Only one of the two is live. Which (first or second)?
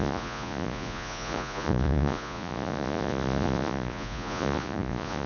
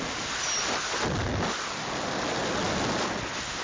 second